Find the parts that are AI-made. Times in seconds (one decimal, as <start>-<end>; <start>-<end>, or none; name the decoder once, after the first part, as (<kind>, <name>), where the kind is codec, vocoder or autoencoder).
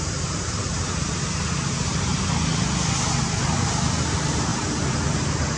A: 0.0-2.1 (vocoder, BigVGAN v2); 3.6-4.5